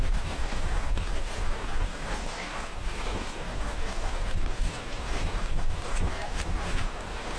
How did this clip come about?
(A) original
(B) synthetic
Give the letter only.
B